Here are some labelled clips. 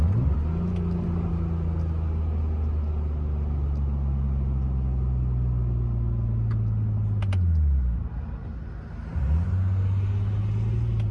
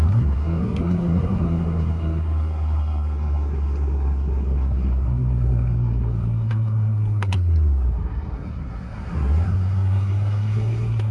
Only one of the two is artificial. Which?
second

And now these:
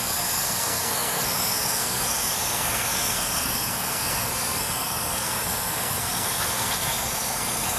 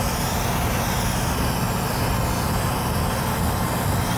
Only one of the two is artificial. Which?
first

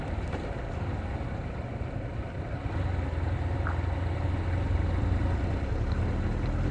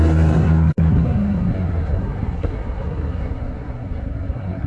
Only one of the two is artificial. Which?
second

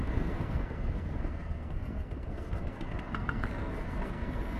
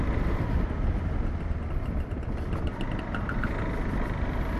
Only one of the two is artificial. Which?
first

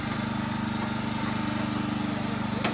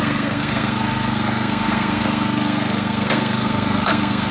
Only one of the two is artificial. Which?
second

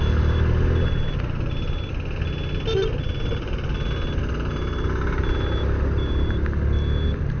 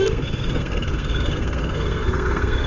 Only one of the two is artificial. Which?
second